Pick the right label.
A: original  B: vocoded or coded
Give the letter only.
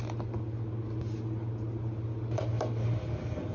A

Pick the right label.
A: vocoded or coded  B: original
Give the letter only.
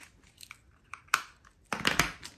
B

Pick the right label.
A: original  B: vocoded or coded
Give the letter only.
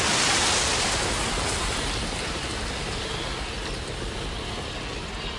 A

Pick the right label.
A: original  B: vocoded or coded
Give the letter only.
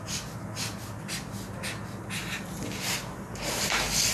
A